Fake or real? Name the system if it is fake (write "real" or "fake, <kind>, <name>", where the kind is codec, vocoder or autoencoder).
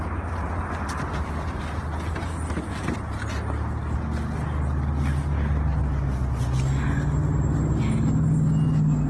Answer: real